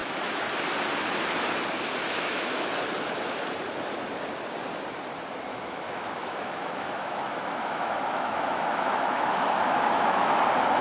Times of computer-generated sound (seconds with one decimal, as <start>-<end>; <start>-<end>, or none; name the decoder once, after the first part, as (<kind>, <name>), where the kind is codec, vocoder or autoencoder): 0.0-0.5 (autoencoder, DAC-VAE); 2.0-2.7; 5.5-10.4